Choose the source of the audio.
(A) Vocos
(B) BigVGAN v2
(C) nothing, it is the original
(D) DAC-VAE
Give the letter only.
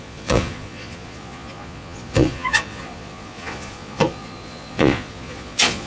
A